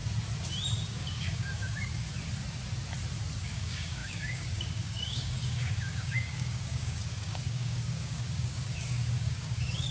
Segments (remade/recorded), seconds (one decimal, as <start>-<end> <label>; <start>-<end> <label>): 0.0-0.9 recorded; 0.9-1.9 remade; 1.9-3.4 recorded; 3.4-9.9 remade